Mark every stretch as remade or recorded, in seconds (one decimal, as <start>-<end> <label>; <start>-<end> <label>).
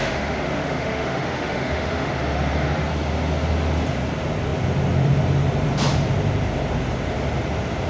0.0-2.1 remade; 2.1-7.9 recorded